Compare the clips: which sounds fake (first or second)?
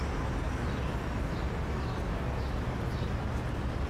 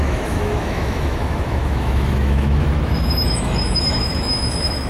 second